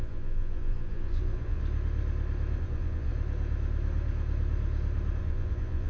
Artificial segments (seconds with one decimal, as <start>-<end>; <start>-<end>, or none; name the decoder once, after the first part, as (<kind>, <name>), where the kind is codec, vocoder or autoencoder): 0.0-1.6 (vocoder, Vocos); 2.6-3.1; 5.2-5.9